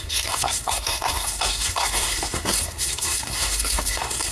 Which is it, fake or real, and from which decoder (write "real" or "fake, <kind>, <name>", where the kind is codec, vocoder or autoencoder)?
fake, codec, SNAC